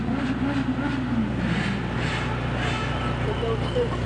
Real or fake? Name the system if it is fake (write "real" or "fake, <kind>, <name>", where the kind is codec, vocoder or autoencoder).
real